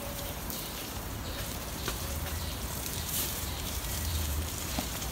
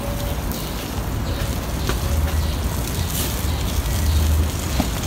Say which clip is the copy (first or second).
first